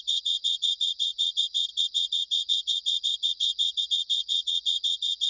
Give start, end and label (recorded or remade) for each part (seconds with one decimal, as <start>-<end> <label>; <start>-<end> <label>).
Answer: 0.0-5.3 remade